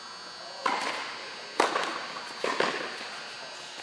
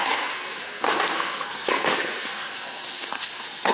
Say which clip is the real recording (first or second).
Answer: first